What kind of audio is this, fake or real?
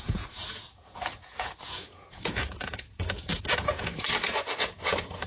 fake